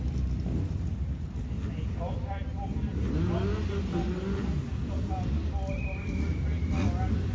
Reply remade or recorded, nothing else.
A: recorded